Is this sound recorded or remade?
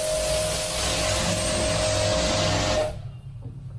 recorded